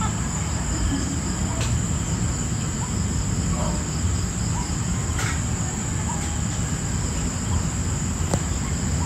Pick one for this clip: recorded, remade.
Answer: recorded